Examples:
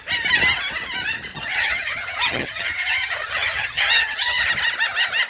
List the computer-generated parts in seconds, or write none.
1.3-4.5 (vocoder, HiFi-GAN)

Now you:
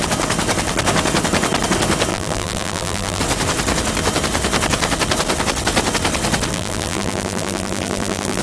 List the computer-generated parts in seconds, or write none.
2.1-3.2 (vocoder, BigVGAN v2); 6.5-8.4

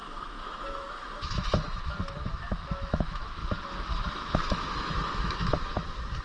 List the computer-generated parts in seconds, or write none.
0.0-6.2 (autoencoder, DAC-VAE)

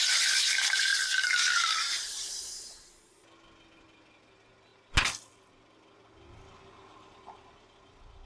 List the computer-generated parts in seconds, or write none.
none